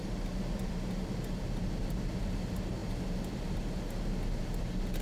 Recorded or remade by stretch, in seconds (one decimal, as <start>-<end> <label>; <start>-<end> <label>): 0.0-5.0 recorded